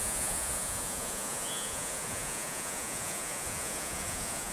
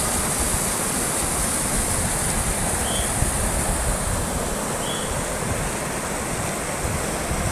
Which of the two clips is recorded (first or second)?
second